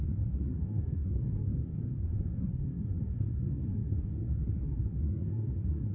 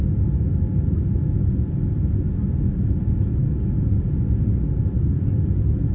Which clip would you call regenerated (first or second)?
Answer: first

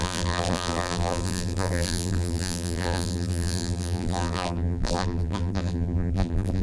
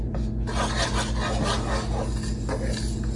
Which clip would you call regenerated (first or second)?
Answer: first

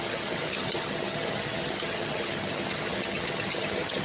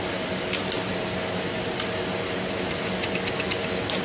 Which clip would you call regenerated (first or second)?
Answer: first